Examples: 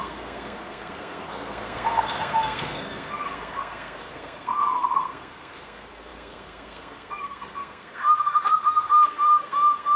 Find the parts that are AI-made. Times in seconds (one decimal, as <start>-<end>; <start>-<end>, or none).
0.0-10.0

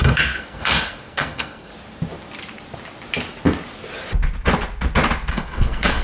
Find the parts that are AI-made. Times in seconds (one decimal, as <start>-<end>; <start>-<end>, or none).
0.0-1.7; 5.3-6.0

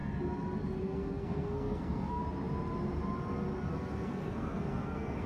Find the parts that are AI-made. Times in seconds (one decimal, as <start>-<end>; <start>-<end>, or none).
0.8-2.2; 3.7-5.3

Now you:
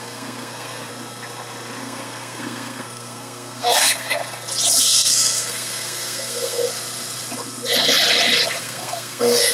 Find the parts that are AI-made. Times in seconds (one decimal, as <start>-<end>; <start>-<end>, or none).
0.0-0.9; 1.8-4.2; 4.8-6.7; 8.6-9.5